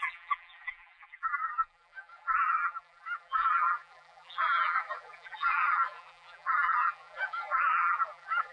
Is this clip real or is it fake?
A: fake